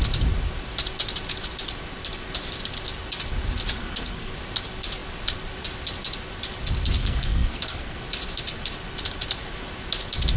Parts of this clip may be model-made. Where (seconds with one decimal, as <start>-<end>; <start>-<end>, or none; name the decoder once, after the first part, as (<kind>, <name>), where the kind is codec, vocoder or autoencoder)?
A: 3.8-4.3 (codec, SNAC); 7.0-8.0